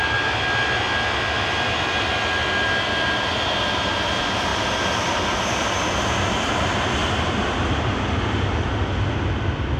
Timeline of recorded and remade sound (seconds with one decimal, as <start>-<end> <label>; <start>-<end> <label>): 0.0-7.0 recorded; 7.0-8.6 remade; 8.6-9.8 recorded